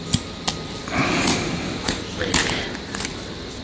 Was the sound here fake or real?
real